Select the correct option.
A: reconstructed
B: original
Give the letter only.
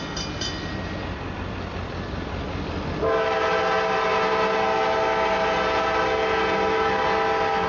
B